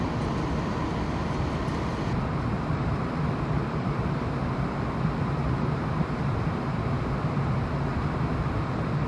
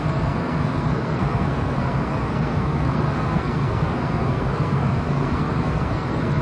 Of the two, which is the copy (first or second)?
second